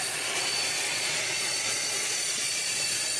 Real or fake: fake